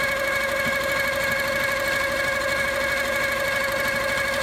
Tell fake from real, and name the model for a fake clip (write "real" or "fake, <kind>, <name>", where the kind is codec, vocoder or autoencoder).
real